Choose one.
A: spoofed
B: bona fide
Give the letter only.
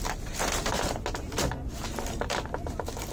B